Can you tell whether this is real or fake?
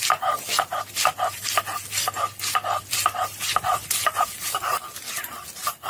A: real